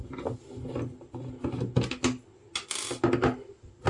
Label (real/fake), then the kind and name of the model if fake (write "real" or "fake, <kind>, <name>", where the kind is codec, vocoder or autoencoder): real